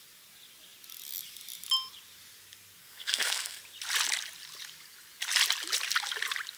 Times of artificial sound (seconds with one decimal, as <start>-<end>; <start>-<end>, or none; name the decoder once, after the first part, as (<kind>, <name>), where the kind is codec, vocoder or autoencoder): 2.8-3.6 (codec, SNAC)